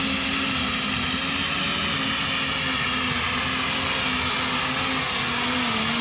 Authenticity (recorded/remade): recorded